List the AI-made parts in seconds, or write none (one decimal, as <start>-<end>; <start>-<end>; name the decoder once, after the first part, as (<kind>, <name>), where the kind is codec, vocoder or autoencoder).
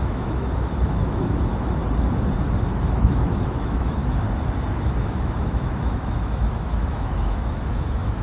0.0-1.8 (autoencoder, DAC-VAE); 2.7-4.0; 4.7-8.2